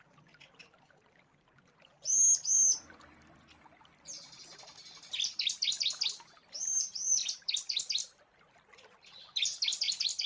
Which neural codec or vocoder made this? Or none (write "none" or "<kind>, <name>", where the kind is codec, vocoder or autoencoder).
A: none